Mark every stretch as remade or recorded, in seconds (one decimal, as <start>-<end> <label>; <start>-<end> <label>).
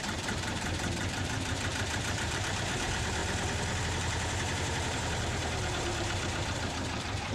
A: 0.0-3.2 remade; 3.2-3.8 recorded; 3.8-7.3 remade